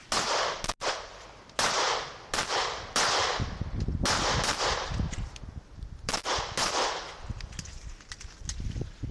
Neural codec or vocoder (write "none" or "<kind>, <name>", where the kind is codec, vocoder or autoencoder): none